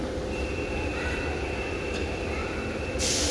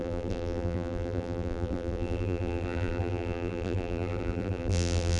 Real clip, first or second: first